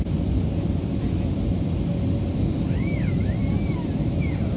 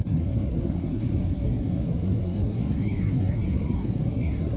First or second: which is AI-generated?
second